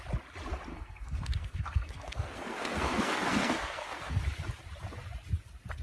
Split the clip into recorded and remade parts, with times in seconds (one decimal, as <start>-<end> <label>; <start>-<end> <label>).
0.0-0.7 recorded; 0.7-4.2 remade; 4.2-5.8 recorded